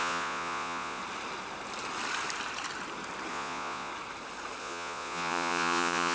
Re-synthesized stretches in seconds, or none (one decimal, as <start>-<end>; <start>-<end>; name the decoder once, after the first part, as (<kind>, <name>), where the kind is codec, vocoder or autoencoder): 0.0-1.0 (vocoder, Vocos); 3.3-3.9; 4.6-6.1